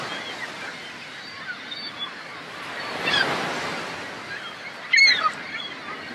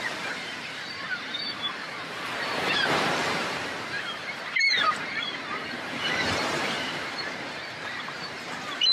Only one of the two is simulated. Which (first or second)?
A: second